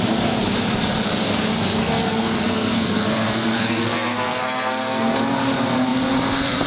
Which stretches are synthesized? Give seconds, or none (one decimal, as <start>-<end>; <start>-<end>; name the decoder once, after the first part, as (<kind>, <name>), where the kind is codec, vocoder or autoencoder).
1.8-5.1 (codec, SNAC)